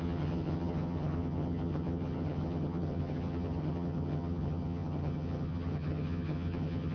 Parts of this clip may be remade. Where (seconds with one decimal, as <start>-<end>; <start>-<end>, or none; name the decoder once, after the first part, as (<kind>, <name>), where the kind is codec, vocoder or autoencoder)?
0.0-6.9 (vocoder, HiFi-GAN)